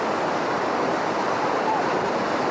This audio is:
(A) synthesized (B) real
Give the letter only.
A